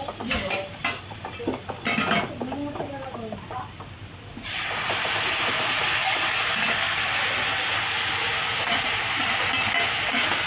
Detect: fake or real real